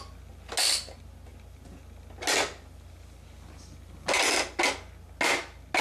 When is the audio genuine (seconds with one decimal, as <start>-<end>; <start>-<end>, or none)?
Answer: 0.0-5.8